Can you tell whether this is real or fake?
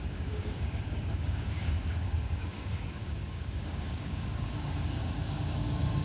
fake